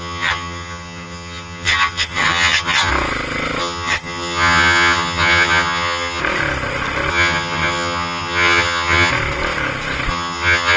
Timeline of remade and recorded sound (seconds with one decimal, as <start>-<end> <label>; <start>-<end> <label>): 0.0-2.9 remade; 2.9-3.6 recorded; 3.6-6.2 remade; 6.2-7.1 recorded; 7.1-9.1 remade; 9.1-10.1 recorded; 10.1-10.8 remade